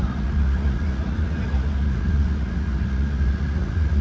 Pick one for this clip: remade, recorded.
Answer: remade